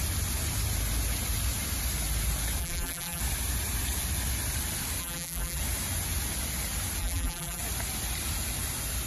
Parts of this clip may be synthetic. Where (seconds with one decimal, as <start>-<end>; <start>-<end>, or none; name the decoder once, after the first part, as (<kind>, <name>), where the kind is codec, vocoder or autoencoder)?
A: 2.6-3.2 (vocoder, BigVGAN v2); 5.0-5.6; 7.0-7.6